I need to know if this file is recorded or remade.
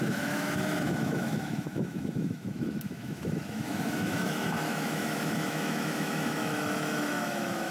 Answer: remade